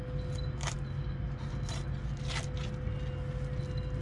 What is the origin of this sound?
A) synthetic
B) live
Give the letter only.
B